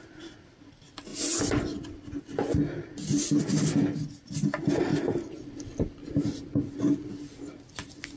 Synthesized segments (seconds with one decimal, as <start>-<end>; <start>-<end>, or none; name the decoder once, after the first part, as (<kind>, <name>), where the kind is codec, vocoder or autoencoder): none